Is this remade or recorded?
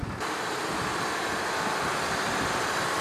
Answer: recorded